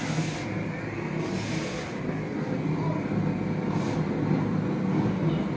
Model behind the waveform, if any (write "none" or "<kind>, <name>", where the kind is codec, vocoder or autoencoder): none